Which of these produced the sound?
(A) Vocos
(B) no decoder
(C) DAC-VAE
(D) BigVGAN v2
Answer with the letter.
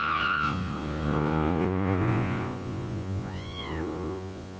A